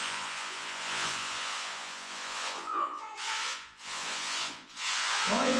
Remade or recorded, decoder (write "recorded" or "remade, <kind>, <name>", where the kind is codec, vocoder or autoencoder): remade, vocoder, Vocos